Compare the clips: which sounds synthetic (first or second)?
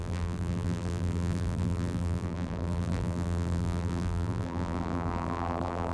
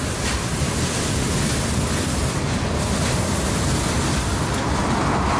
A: first